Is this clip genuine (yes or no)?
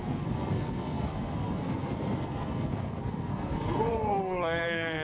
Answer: no